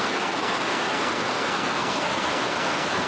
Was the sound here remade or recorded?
remade